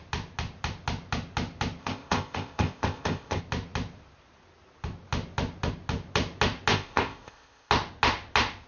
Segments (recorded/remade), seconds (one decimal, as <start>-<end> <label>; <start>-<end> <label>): 0.0-1.8 recorded; 1.8-3.4 remade; 3.4-6.7 recorded; 6.7-7.7 remade; 7.7-8.7 recorded